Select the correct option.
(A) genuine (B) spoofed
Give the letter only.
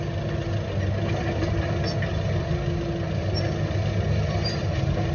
A